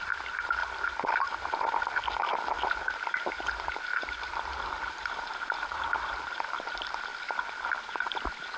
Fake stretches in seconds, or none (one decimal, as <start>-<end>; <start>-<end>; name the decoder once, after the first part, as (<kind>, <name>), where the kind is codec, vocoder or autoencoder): 0.0-0.6 (vocoder, BigVGAN v2); 3.3-7.1